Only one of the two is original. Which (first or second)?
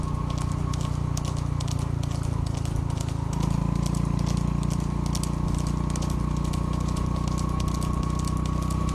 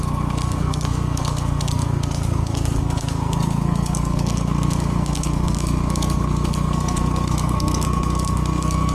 first